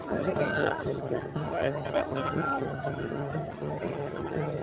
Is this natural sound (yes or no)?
no